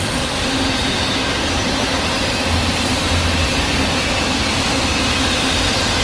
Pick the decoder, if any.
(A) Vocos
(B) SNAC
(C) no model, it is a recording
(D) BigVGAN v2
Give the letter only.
D